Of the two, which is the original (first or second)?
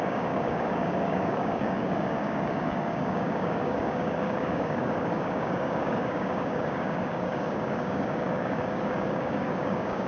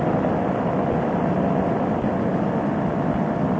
second